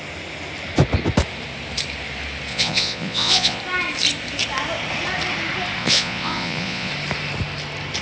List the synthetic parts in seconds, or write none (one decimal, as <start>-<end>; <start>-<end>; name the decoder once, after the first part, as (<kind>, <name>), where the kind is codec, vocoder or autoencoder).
2.5-3.6 (vocoder, Vocos); 5.8-6.9